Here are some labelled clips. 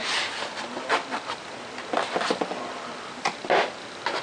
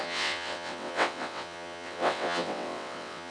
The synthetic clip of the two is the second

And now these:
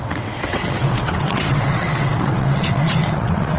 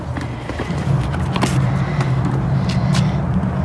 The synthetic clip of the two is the first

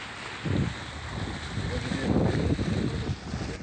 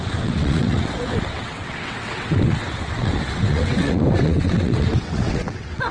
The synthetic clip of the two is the second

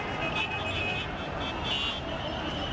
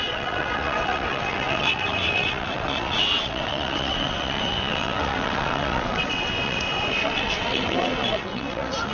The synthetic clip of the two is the second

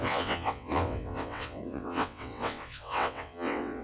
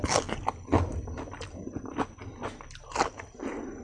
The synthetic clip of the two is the first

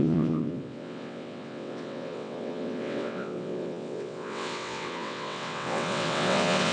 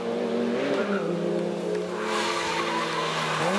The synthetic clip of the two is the first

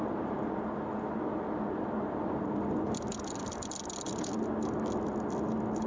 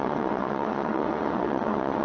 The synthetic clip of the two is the second